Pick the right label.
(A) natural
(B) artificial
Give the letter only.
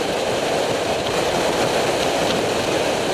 A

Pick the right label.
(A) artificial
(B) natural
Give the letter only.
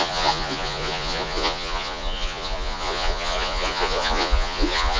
A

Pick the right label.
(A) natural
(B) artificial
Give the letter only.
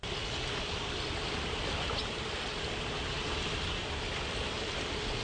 A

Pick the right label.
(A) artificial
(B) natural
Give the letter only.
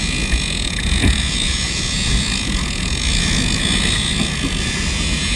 A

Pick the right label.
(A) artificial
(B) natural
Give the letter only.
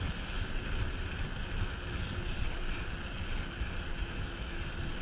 B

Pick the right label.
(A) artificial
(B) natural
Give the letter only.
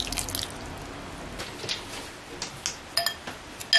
B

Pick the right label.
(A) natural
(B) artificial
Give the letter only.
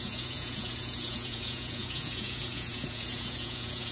B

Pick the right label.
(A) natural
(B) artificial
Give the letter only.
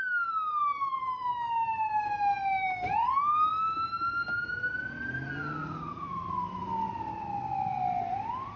A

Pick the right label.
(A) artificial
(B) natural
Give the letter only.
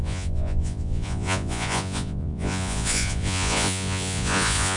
A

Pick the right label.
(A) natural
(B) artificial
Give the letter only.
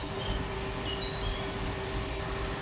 A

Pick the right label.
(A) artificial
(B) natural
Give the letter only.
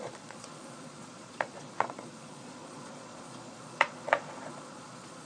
A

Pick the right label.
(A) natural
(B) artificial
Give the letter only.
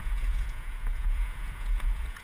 B